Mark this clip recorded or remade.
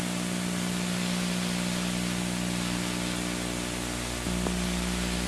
recorded